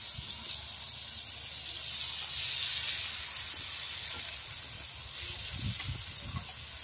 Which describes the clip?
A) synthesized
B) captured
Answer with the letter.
B